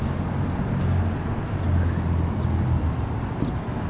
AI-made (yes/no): no